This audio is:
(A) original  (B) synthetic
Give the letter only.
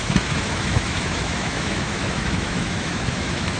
B